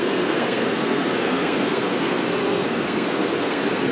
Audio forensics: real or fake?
fake